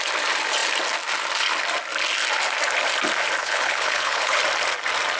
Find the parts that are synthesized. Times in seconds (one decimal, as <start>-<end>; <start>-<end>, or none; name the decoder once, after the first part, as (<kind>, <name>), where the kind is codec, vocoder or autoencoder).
3.4-4.4 (codec, HILCodec)